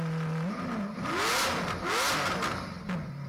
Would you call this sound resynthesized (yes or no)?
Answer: no